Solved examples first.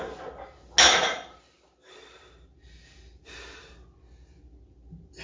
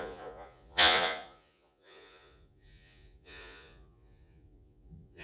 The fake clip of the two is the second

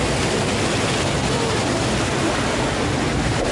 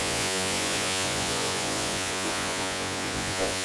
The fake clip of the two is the second